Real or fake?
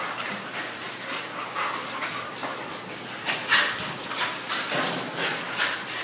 real